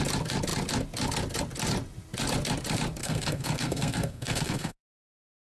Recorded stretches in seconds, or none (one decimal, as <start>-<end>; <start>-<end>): 0.0-3.0